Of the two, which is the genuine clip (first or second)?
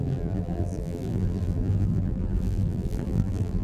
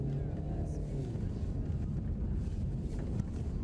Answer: second